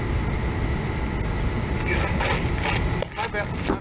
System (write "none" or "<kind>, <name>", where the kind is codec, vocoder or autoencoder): none